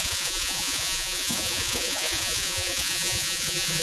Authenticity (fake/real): fake